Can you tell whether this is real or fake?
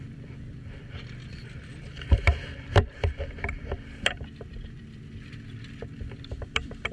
fake